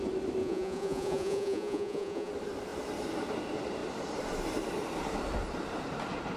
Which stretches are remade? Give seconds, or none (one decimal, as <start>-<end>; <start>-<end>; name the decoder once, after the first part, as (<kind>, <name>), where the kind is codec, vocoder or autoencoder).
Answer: 0.4-2.3 (vocoder, Vocos)